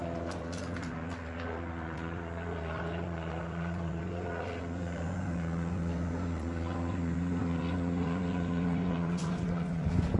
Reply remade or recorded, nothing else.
remade